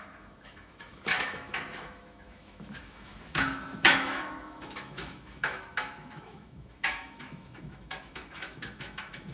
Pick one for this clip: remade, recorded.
remade